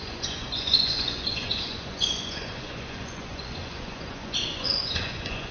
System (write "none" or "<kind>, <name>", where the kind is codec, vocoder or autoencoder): vocoder, Vocos